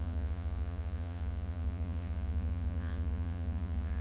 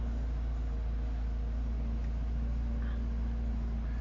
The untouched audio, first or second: second